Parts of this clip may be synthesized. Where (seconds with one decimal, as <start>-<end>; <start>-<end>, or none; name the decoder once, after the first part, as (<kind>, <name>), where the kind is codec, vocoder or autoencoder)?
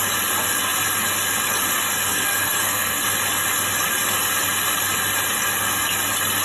2.1-3.0 (codec, SNAC)